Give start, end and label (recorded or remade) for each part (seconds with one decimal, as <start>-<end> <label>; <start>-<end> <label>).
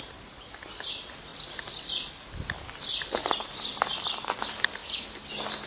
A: 0.0-4.8 remade; 4.8-5.7 recorded